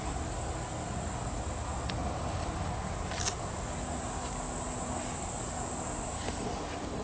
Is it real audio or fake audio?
real